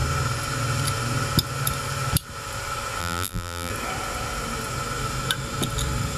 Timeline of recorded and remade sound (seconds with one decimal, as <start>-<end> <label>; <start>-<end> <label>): 0.0-3.0 recorded; 3.0-3.7 remade; 3.7-6.2 recorded